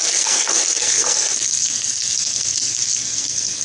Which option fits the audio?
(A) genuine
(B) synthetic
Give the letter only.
B